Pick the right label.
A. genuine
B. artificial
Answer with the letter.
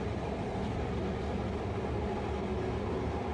A